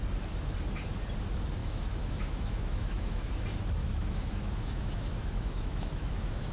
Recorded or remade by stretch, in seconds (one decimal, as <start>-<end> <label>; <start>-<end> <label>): 0.0-1.6 recorded; 1.6-3.3 remade; 3.3-3.8 recorded; 3.8-6.5 remade